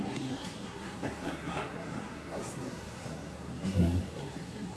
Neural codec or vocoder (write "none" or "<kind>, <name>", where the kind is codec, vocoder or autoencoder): codec, SNAC